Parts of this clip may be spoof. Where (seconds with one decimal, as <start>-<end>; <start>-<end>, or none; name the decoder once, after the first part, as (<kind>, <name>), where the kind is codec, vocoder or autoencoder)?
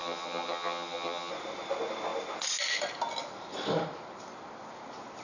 0.0-1.3 (vocoder, HiFi-GAN)